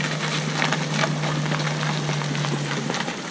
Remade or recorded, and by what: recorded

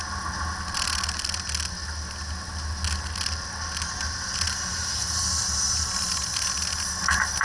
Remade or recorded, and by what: recorded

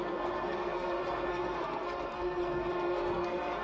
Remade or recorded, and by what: remade, codec, SNAC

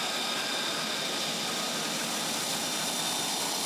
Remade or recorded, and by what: recorded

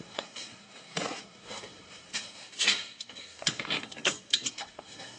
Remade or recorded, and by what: remade, codec, SNAC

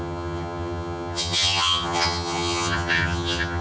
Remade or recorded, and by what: remade, vocoder, HiFi-GAN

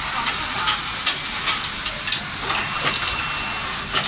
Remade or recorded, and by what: recorded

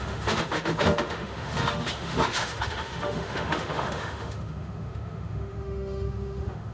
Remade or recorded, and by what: remade, autoencoder, DAC-VAE